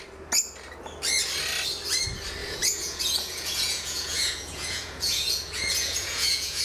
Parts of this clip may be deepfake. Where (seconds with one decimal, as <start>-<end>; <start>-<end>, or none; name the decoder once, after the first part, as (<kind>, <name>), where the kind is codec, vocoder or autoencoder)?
2.4-6.6 (vocoder, Vocos)